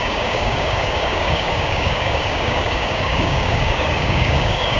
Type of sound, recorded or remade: remade